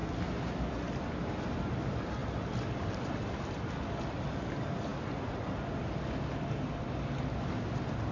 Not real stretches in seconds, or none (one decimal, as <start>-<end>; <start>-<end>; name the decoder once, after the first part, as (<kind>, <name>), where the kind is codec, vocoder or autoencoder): none